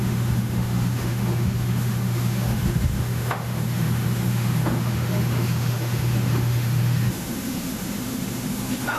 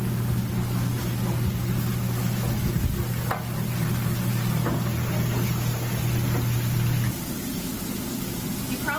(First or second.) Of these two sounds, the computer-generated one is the first